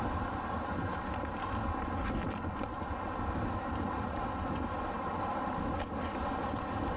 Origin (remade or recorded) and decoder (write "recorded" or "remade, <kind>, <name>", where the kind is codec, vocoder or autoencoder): recorded